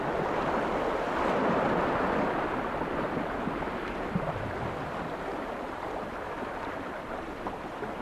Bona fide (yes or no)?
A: yes